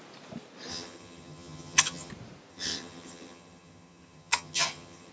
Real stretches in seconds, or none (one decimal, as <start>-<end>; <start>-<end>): 0.0-0.7; 2.1-2.5